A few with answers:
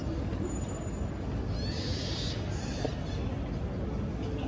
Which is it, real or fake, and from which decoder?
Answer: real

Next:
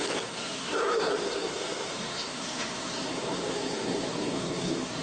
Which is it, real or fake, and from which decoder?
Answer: fake, codec, SNAC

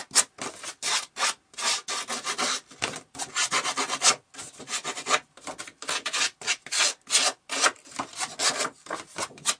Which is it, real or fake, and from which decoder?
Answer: real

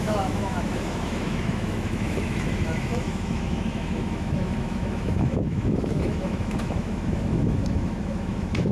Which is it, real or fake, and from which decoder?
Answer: fake, autoencoder, DAC-VAE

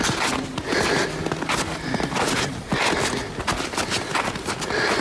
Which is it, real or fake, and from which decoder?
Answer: real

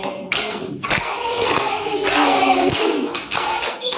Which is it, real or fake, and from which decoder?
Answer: fake, codec, SNAC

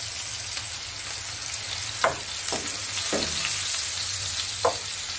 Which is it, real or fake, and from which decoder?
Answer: real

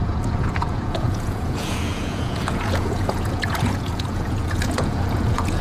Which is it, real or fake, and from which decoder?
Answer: fake, vocoder, Vocos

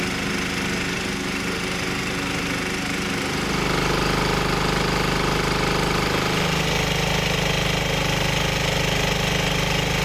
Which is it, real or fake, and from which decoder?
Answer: real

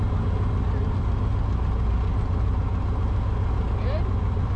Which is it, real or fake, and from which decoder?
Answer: real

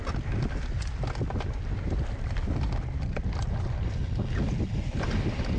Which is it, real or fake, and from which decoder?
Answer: real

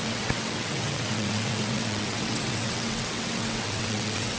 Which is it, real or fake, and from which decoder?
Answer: fake, vocoder, WaveNeXt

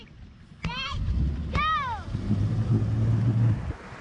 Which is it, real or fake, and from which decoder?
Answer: real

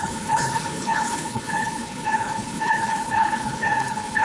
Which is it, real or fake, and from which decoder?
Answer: fake, codec, HILCodec